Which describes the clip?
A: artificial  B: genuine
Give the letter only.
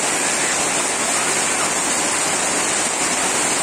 B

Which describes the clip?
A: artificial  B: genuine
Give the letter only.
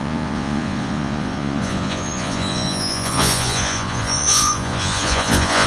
A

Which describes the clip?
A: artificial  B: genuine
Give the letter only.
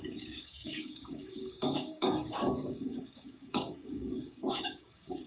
A